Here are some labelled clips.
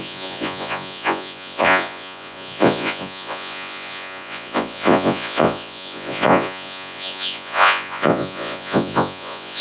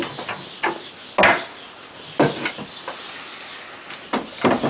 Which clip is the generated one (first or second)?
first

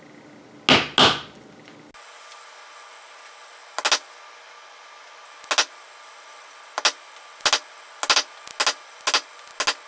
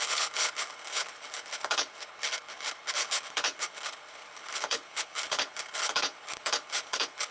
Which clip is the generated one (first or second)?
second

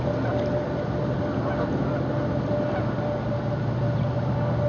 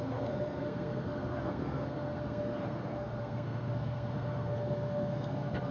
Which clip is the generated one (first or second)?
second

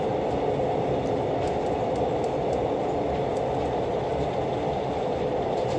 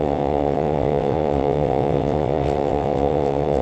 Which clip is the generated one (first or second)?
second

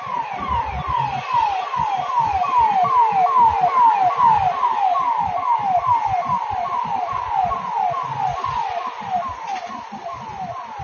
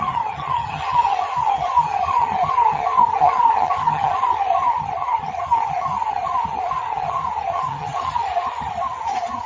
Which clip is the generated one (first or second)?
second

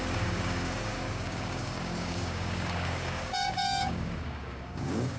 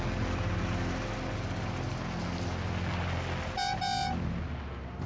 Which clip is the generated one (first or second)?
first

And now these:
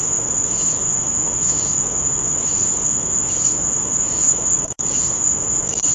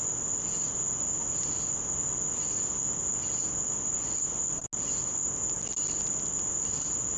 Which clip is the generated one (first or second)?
first